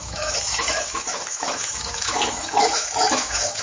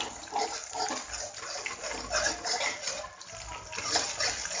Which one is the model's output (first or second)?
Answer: first